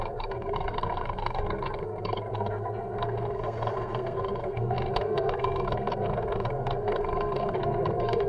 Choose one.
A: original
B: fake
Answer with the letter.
B